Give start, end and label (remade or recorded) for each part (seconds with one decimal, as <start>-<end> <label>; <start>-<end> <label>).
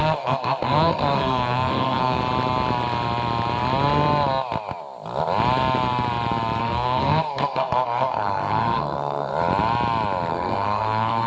0.0-2.2 remade; 2.2-6.6 recorded; 6.6-9.3 remade; 9.3-10.3 recorded; 10.3-11.3 remade